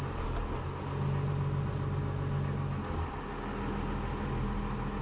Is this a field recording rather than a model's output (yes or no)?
yes